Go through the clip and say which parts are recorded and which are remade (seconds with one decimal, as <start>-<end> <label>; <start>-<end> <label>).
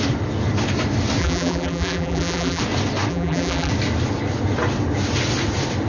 0.0-1.2 recorded; 1.2-2.6 remade; 2.6-3.1 recorded; 3.1-3.7 remade; 3.7-5.9 recorded